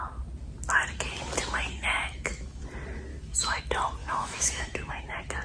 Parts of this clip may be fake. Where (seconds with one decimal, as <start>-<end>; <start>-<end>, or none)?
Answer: 1.9-2.6; 3.1-3.6; 4.0-5.0